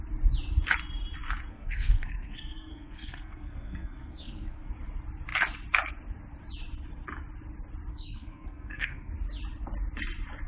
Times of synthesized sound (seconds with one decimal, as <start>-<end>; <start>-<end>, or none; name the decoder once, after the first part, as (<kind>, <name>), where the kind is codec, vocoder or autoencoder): 1.5-4.7 (codec, SNAC); 7.9-9.1